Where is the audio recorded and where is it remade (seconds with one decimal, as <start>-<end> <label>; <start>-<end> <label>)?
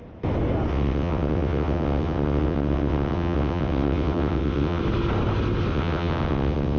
0.0-0.7 recorded; 0.7-4.8 remade; 4.8-5.7 recorded; 5.7-6.8 remade